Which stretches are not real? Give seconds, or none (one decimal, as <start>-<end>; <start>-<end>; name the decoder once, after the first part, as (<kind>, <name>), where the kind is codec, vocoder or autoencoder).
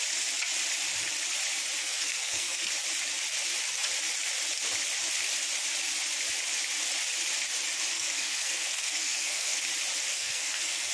1.8-2.7 (codec, SNAC); 7.9-9.6; 10.1-10.9